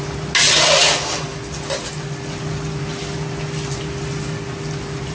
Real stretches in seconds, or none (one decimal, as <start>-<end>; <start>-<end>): 0.0-5.1

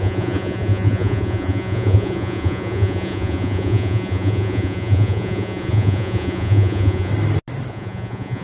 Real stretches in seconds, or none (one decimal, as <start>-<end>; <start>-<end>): 7.1-7.7

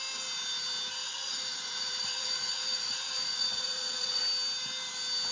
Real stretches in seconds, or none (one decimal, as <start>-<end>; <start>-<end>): 0.0-1.0; 4.2-5.3